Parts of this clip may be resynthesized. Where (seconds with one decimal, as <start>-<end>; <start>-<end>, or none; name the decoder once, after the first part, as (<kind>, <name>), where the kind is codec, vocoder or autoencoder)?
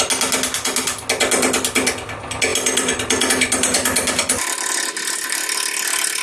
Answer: none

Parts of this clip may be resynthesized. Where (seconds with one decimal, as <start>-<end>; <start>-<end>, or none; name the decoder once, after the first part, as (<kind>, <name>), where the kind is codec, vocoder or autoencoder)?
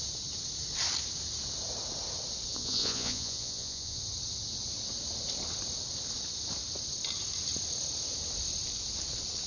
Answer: 2.5-4.0 (vocoder, Vocos)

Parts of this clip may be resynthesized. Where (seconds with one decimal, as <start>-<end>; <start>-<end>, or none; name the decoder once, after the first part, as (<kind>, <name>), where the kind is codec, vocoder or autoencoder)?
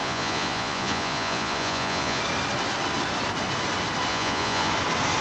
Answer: 0.0-2.2 (vocoder, Vocos); 4.1-4.7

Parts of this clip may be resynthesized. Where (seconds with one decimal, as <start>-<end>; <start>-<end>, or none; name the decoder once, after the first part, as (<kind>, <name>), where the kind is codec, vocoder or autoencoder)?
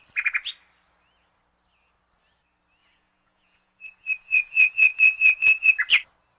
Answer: 2.8-5.7 (vocoder, Vocos)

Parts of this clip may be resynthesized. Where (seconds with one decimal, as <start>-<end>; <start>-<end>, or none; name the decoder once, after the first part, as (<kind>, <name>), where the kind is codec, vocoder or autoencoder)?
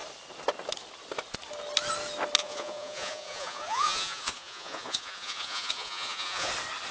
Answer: 2.4-6.5 (vocoder, Vocos)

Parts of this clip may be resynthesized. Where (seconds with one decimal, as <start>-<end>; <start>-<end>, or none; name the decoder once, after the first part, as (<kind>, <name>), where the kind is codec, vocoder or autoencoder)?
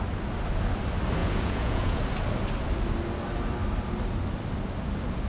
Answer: 1.2-2.0 (vocoder, Vocos)